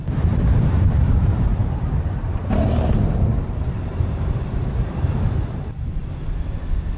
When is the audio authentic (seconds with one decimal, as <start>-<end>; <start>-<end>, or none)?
6.0-7.0